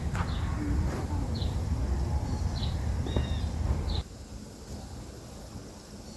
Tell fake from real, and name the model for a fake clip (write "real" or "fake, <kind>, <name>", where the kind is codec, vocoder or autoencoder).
real